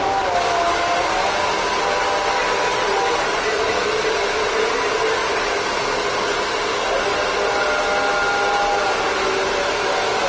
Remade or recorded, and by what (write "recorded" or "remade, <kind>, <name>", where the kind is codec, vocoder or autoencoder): recorded